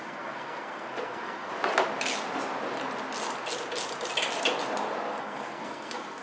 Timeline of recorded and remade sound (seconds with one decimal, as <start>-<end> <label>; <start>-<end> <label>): 0.0-1.5 remade; 1.5-5.2 recorded; 5.2-6.2 remade